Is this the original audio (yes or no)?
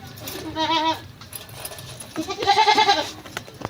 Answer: yes